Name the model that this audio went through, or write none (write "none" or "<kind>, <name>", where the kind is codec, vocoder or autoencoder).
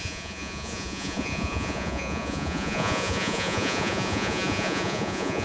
vocoder, Vocos